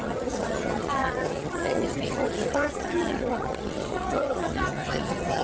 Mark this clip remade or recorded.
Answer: remade